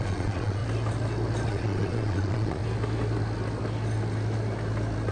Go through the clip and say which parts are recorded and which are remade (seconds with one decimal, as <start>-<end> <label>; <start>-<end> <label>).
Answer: 0.0-0.6 remade; 0.6-1.5 recorded; 1.5-2.6 remade; 2.6-5.1 recorded